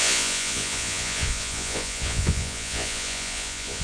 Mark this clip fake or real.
fake